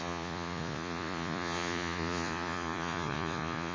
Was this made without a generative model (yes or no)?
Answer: no